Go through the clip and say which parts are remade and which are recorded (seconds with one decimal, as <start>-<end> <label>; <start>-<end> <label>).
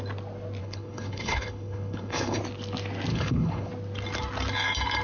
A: 0.0-0.6 recorded; 0.6-2.4 remade; 2.4-3.1 recorded; 3.1-3.7 remade; 3.7-5.0 recorded